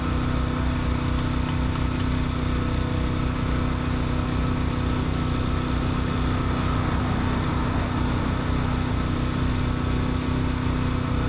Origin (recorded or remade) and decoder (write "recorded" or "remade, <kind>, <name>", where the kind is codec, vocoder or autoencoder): recorded